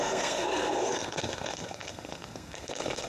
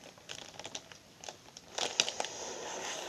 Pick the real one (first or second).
second